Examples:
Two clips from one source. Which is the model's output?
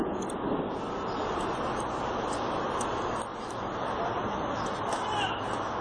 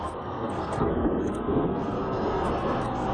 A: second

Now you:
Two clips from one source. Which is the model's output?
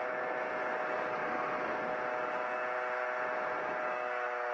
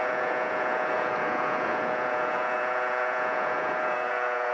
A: second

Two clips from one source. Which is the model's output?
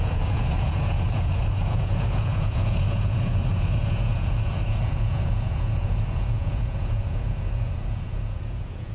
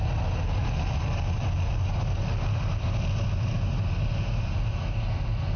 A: first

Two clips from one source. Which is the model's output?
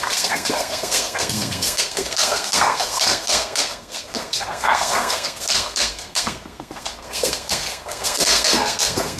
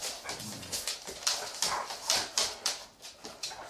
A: first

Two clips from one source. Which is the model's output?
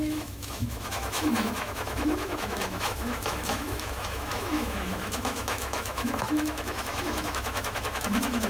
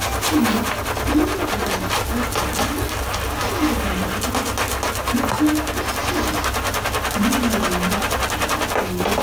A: first